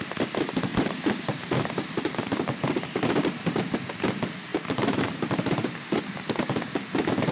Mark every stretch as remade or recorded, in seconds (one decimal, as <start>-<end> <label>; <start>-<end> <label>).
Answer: 0.0-0.7 recorded; 0.7-3.9 remade; 3.9-4.5 recorded; 4.5-6.0 remade; 6.0-7.3 recorded